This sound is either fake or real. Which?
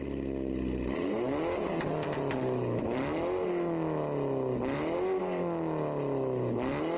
real